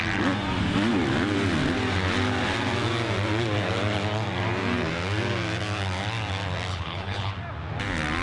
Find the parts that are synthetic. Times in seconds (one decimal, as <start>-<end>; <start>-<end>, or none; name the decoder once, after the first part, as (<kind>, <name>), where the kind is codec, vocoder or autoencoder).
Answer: 6.7-7.3 (codec, HILCodec)